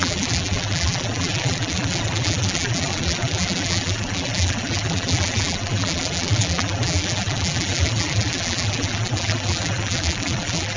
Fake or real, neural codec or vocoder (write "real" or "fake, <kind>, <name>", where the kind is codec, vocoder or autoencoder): fake, vocoder, BigVGAN v2